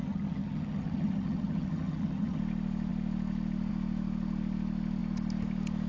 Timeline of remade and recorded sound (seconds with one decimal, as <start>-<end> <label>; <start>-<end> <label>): 0.0-2.4 remade; 2.4-5.9 recorded